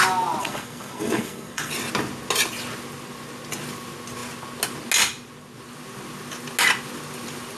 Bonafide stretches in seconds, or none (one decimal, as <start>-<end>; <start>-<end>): 0.0-0.4; 1.7-7.6